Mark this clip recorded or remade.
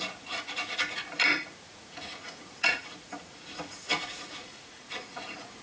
remade